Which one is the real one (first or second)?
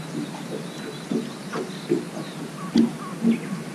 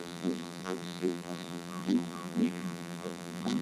first